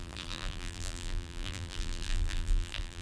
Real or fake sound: fake